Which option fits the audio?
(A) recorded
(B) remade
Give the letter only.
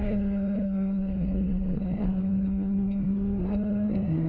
B